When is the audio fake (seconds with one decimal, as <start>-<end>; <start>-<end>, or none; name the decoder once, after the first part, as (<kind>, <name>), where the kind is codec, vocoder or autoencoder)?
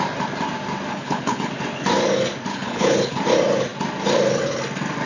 0.9-1.5 (codec, HILCodec); 2.5-3.2